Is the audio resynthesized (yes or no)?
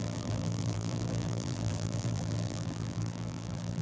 yes